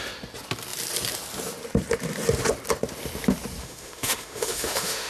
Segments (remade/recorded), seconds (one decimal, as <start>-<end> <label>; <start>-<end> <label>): 0.0-3.6 recorded; 3.6-5.1 remade